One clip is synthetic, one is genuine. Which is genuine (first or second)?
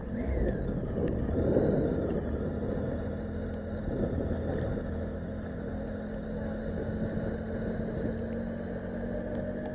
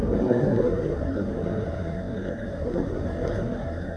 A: first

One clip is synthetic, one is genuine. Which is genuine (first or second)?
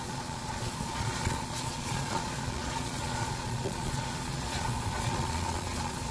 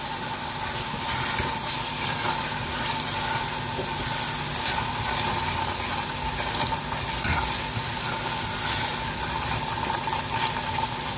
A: second